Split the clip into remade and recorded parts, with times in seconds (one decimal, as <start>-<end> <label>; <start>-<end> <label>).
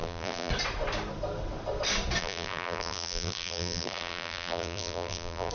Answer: 0.0-0.5 remade; 0.5-2.2 recorded; 2.2-5.5 remade